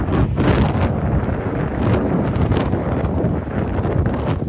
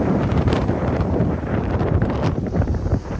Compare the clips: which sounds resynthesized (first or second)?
second